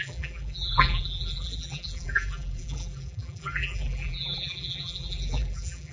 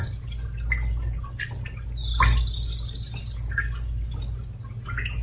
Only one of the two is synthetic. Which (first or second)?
first